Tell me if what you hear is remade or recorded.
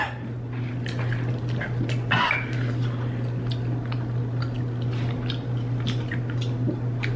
recorded